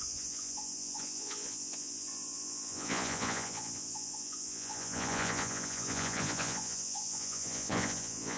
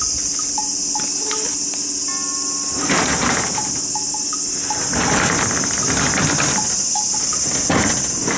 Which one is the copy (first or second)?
first